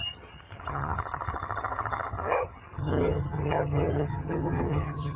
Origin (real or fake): fake